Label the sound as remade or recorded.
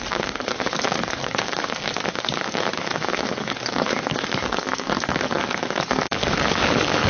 remade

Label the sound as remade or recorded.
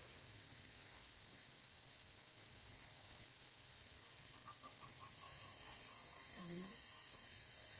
remade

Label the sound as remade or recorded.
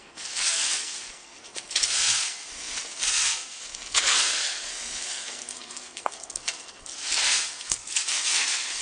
remade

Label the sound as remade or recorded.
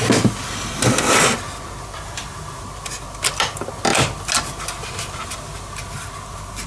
recorded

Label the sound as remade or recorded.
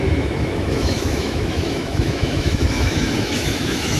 remade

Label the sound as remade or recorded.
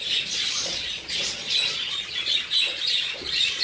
remade